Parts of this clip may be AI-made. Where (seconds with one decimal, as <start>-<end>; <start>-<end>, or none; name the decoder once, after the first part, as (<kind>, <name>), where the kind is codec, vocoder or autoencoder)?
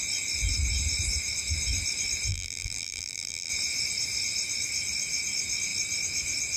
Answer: 2.3-3.5 (vocoder, BigVGAN v2)